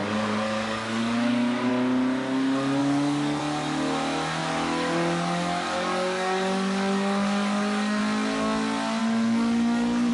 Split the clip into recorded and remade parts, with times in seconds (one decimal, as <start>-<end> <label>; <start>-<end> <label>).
0.0-1.7 remade; 1.7-2.8 recorded; 2.8-3.4 remade; 3.4-4.4 recorded; 4.4-8.0 remade; 8.0-9.0 recorded; 9.0-10.1 remade